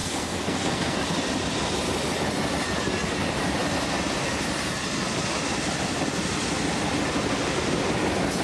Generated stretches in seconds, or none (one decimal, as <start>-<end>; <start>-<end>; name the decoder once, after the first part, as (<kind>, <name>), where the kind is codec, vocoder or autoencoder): 0.0-1.0 (codec, SNAC)